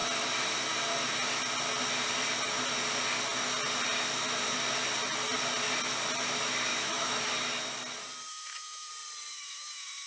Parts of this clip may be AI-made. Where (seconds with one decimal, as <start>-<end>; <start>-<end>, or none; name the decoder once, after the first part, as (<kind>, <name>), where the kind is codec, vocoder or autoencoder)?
6.7-7.3 (autoencoder, DAC-VAE); 8.3-8.9; 9.3-10.1